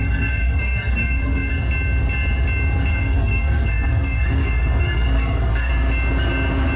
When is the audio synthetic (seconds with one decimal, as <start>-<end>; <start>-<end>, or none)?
0.0-1.5; 2.9-5.7